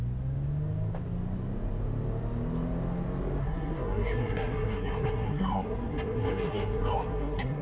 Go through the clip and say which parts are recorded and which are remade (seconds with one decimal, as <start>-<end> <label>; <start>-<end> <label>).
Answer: 0.0-3.4 recorded; 3.4-7.6 remade